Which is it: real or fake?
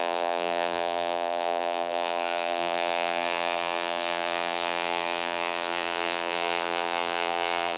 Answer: fake